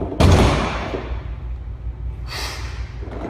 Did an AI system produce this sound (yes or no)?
no